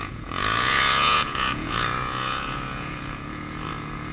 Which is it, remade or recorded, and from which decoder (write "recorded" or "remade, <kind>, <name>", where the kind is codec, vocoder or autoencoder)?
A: remade, vocoder, Vocos